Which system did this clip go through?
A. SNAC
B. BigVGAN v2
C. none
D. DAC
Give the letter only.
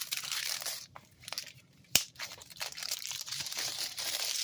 B